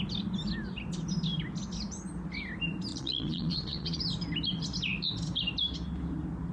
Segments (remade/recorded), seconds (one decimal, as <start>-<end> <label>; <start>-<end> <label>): 0.0-2.9 recorded; 2.9-4.0 remade; 4.0-6.5 recorded